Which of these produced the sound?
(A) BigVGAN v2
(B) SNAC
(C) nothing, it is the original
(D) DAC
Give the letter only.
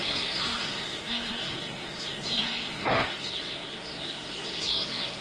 B